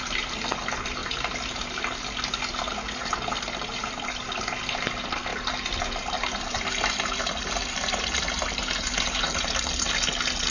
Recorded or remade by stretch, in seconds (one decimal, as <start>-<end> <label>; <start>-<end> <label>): 0.0-1.0 recorded; 1.0-1.8 remade; 1.8-5.3 recorded; 5.3-9.9 remade; 9.9-10.5 recorded